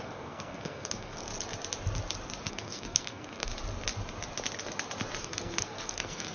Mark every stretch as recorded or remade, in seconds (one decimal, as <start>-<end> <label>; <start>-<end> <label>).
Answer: 0.0-1.3 remade; 1.3-2.5 recorded; 2.5-3.5 remade; 3.5-5.2 recorded; 5.2-6.3 remade